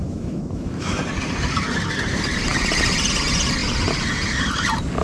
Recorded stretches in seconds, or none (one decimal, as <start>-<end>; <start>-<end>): 1.0-5.0